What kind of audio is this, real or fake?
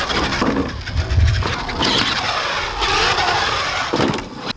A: real